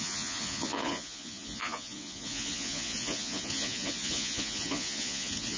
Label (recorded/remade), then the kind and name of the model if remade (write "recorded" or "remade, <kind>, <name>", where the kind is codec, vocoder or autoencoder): remade, vocoder, Vocos